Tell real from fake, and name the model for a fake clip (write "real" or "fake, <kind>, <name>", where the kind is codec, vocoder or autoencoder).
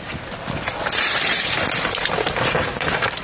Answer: real